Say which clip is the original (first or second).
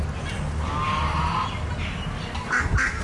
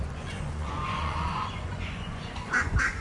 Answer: first